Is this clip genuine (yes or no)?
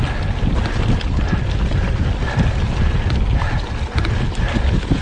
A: yes